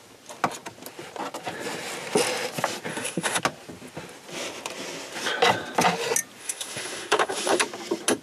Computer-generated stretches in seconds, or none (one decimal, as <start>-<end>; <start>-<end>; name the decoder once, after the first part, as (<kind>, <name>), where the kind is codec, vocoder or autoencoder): 2.9-3.4 (autoencoder, DAC-VAE); 6.4-7.6